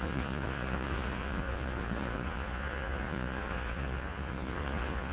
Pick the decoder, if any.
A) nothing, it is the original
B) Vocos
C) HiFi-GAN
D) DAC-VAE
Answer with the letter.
B